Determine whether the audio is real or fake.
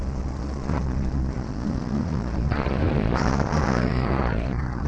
fake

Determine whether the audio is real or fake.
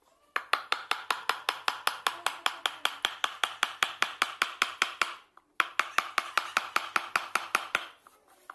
real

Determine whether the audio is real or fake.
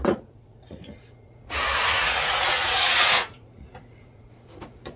fake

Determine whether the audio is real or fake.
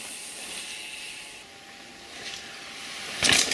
real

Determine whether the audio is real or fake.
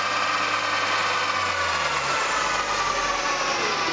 real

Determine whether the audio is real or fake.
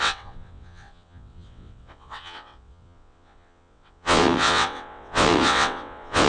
fake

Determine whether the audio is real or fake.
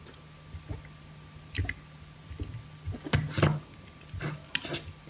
real